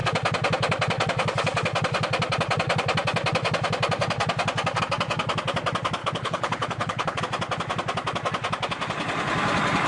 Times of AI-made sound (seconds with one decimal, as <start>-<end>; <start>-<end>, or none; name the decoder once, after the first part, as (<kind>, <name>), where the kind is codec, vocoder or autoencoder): 6.0-7.2 (codec, HILCodec)